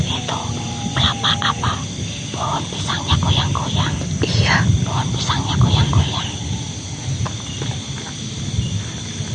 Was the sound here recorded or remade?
recorded